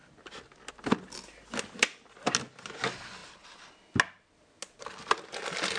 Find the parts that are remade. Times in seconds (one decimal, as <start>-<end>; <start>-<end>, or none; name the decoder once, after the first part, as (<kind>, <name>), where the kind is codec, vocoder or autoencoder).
none